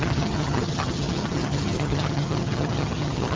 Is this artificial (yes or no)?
yes